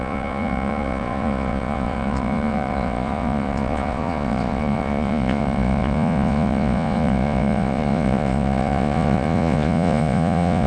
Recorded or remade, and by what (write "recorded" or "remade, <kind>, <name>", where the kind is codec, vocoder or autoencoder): remade, vocoder, Vocos